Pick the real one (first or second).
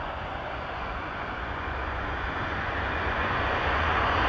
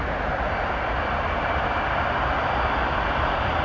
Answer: second